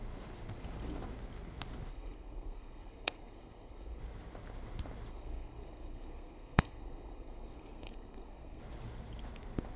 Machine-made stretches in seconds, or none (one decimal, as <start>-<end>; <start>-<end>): 1.9-4.0; 5.1-8.6